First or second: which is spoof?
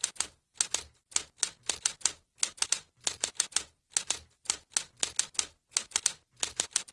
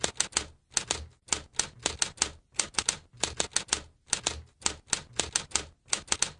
first